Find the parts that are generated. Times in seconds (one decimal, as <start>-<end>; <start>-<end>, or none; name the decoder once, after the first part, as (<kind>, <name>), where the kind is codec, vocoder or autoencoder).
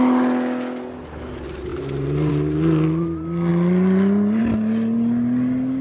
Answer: none